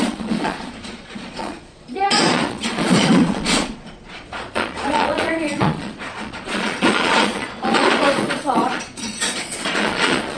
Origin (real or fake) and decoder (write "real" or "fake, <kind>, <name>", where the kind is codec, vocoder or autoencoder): fake, vocoder, Vocos